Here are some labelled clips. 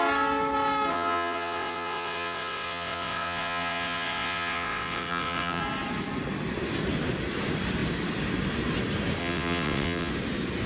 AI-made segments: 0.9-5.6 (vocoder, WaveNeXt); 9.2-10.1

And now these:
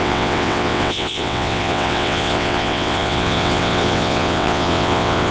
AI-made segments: 0.0-5.3 (vocoder, WaveNeXt)

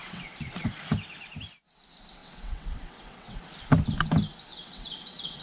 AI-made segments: 0.0-0.7 (vocoder, WaveNeXt); 2.2-3.4; 4.5-5.4

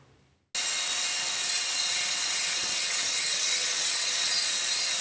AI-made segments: 1.4-4.4 (vocoder, WaveNeXt)